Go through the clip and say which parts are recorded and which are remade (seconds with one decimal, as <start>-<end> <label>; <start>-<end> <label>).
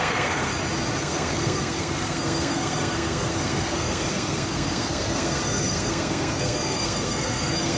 0.0-0.5 remade; 0.5-1.0 recorded; 1.0-7.8 remade